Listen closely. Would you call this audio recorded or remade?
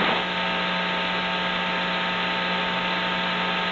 recorded